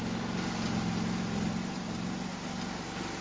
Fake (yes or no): no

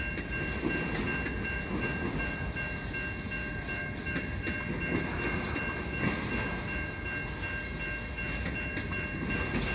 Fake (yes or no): no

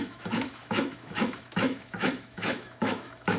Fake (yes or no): yes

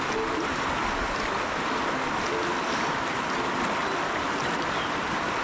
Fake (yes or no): no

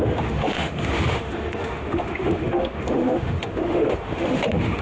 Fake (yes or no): yes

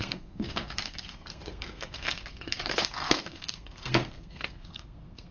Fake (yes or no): yes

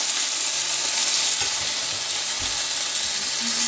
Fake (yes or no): no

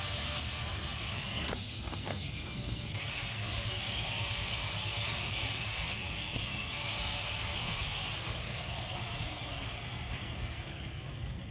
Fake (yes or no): yes